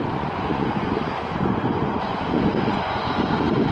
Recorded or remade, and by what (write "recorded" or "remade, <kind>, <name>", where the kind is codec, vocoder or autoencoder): remade, vocoder, Vocos